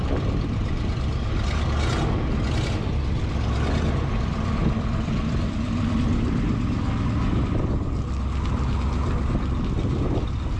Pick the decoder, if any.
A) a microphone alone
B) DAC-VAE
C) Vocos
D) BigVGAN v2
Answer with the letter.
A